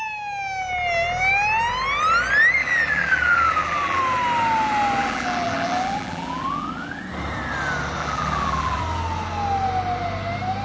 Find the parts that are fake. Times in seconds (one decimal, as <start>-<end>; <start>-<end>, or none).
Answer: 2.6-4.0; 5.0-7.0; 8.0-8.8